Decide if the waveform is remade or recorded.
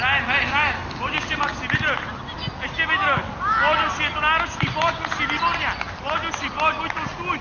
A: recorded